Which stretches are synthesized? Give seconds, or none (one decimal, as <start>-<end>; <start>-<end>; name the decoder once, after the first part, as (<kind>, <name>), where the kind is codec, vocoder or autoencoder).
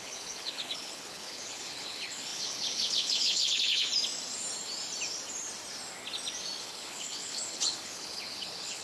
0.0-3.9 (codec, HILCodec); 6.6-8.8